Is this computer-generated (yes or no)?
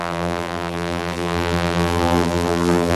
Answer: yes